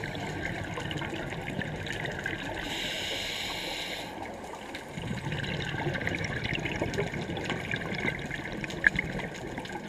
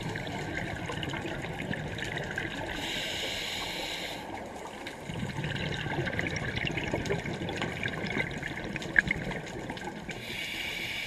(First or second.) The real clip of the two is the first